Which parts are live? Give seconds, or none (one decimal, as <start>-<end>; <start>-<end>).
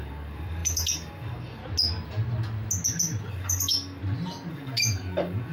1.6-3.3; 4.0-4.5